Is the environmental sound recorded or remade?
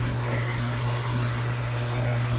remade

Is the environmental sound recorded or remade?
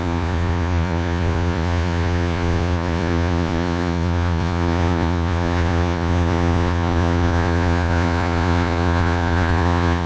remade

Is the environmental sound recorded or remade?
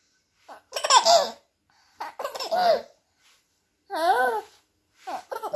recorded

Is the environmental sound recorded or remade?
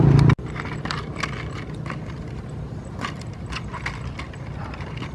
recorded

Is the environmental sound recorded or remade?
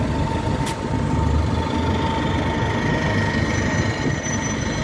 recorded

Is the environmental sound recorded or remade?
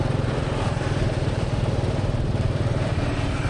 remade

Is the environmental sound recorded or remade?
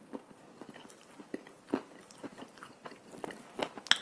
recorded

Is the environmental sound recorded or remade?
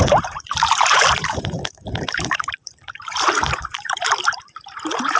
remade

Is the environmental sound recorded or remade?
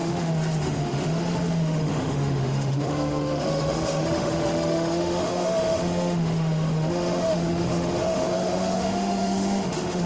remade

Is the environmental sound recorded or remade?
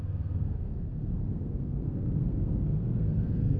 remade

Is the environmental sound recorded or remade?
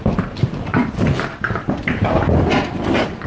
recorded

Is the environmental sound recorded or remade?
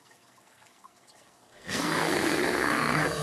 remade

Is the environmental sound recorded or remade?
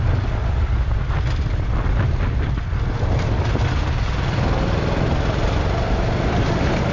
recorded